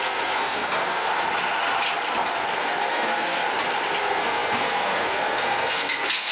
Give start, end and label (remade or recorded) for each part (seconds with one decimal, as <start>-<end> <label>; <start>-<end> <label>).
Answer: 0.0-1.1 remade; 1.1-2.9 recorded; 2.9-3.4 remade; 3.4-4.0 recorded; 4.0-6.3 remade